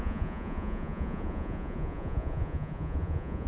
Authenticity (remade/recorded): remade